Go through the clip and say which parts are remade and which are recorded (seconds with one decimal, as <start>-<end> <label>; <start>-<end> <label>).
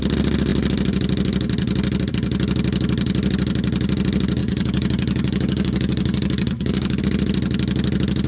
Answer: 0.0-4.4 recorded; 4.4-7.0 remade; 7.0-8.3 recorded